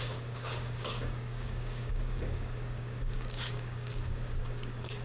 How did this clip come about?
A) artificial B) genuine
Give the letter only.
A